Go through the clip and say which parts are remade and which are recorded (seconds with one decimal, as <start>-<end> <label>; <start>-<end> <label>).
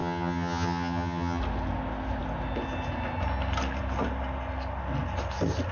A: 0.0-1.4 remade; 1.4-5.7 recorded